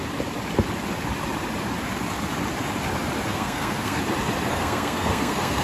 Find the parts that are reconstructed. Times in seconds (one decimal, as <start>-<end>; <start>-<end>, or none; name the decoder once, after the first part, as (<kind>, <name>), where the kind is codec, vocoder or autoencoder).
3.3-4.0 (codec, SNAC); 4.5-5.6